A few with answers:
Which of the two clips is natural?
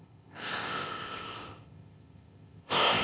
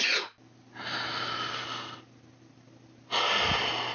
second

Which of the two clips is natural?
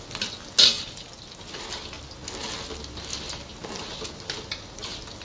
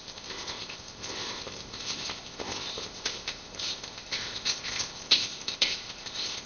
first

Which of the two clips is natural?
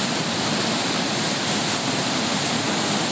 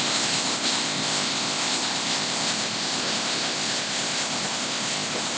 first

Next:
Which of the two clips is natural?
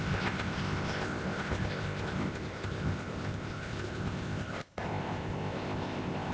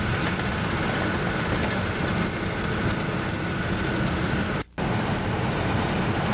second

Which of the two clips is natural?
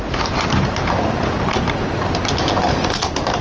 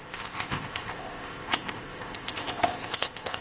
first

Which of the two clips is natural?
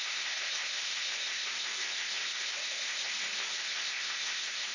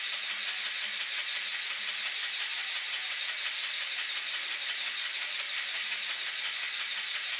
second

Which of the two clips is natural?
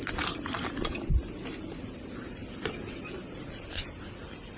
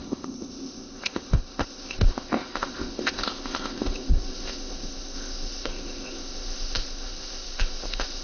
first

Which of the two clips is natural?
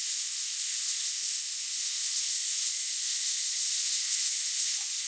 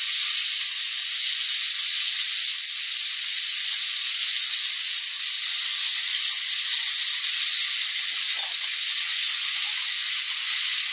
second